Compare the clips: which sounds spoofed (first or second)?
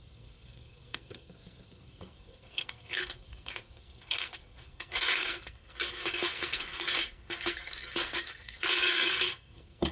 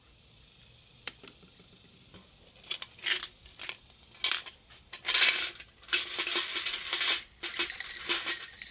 first